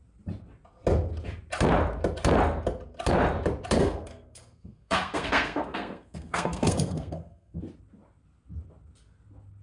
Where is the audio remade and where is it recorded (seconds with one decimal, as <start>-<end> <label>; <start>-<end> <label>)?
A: 0.0-3.8 recorded; 3.8-7.6 remade; 7.6-9.6 recorded

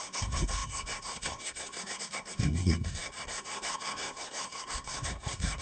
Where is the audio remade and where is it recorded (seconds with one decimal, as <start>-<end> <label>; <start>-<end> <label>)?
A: 0.0-5.6 remade

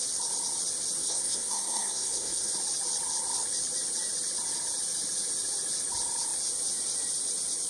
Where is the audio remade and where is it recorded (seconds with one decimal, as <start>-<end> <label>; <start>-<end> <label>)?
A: 0.0-1.0 recorded; 1.0-2.5 remade; 2.5-7.7 recorded

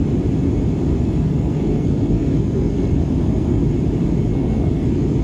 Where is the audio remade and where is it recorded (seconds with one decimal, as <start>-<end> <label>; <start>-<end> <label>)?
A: 0.0-0.9 recorded; 0.9-3.6 remade; 3.6-4.3 recorded; 4.3-5.2 remade

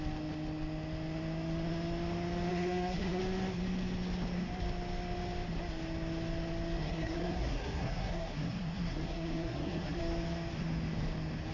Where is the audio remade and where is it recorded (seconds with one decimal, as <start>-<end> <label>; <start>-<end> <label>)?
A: 0.0-2.5 recorded; 2.5-3.2 remade; 3.2-6.8 recorded; 6.8-10.0 remade; 10.0-11.5 recorded

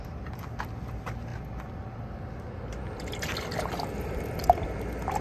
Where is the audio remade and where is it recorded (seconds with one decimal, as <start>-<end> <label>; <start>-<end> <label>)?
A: 0.0-5.2 recorded

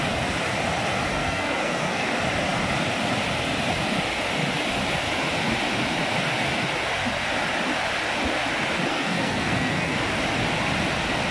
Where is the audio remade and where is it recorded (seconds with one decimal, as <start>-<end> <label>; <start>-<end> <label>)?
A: 0.0-1.1 recorded; 1.1-2.1 remade; 2.1-8.9 recorded; 8.9-10.0 remade; 10.0-11.3 recorded